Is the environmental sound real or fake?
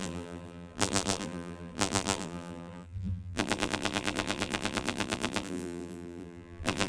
fake